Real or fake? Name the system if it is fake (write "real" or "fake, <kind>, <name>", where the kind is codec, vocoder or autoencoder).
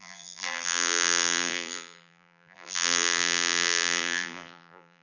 fake, vocoder, BigVGAN v2